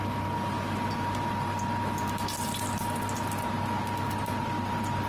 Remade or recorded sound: recorded